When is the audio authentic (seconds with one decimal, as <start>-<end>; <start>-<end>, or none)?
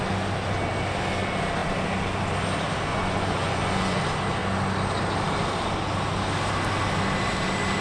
0.0-2.9; 4.0-7.8